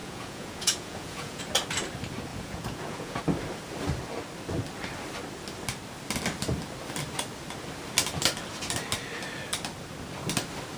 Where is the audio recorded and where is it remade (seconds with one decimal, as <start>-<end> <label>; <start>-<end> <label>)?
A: 0.0-1.4 remade; 1.4-2.3 recorded; 2.3-3.2 remade; 3.2-10.8 recorded